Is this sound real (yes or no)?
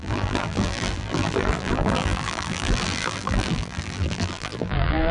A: no